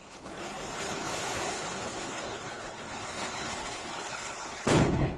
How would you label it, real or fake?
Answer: fake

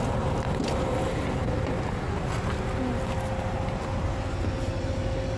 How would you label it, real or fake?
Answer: real